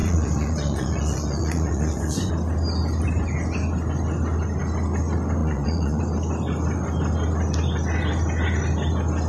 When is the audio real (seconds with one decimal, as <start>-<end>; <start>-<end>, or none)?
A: 2.3-5.4; 6.0-9.3